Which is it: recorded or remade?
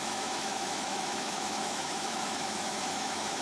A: remade